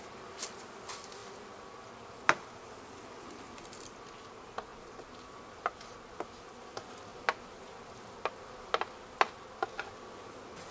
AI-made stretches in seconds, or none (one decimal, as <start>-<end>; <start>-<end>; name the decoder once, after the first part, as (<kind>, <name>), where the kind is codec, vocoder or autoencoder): 4.7-5.4 (vocoder, BigVGAN v2)

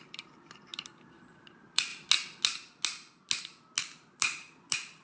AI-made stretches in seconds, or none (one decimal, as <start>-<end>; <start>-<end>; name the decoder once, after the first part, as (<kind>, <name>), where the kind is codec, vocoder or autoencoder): 0.0-1.9 (vocoder, BigVGAN v2); 3.8-5.0

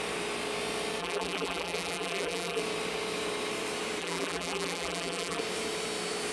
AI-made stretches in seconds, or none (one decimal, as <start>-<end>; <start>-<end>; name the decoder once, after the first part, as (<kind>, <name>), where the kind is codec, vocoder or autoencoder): 1.0-2.6 (vocoder, BigVGAN v2); 4.0-5.4